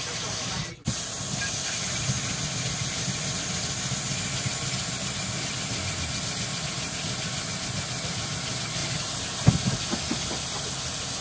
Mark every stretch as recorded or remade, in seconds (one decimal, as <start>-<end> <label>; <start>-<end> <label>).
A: 0.0-11.2 recorded